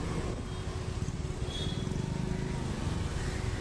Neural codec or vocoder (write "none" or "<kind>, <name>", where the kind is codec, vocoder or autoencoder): none